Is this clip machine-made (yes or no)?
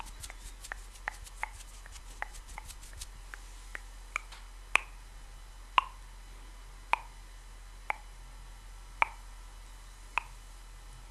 no